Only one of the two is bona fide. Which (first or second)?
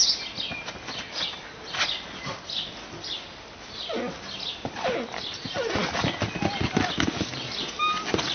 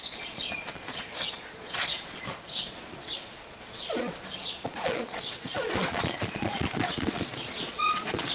first